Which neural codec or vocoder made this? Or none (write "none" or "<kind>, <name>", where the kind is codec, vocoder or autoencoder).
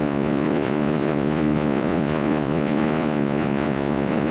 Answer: vocoder, Vocos